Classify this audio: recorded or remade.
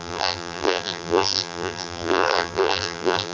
remade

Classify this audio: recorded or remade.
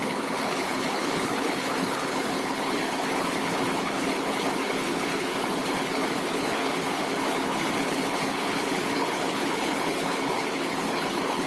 remade